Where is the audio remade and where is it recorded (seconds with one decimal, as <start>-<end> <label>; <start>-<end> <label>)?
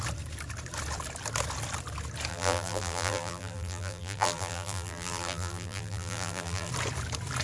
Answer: 0.0-2.3 recorded; 2.3-6.7 remade; 6.7-7.4 recorded